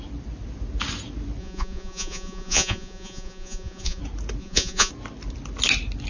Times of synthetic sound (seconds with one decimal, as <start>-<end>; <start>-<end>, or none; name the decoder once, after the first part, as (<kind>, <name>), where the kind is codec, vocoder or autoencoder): 1.4-4.0 (vocoder, Vocos); 4.4-4.9